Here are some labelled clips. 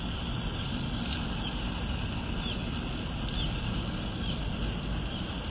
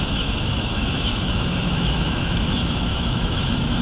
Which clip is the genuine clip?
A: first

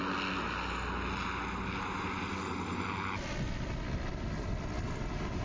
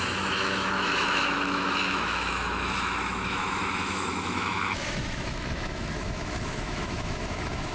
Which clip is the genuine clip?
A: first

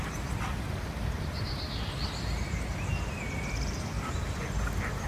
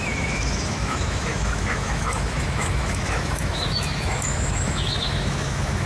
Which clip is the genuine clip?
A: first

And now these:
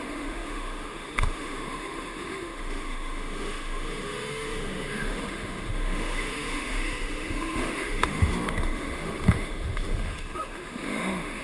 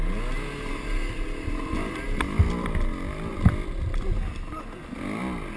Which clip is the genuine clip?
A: second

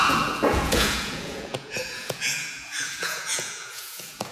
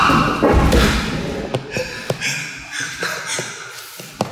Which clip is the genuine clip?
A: second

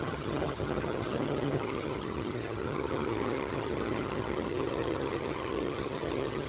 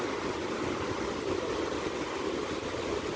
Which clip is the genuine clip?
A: second